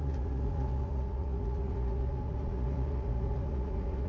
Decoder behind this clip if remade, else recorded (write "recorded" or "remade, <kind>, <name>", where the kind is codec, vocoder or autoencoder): remade, vocoder, Vocos